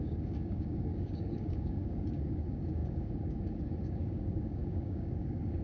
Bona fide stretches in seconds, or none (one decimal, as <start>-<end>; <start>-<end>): none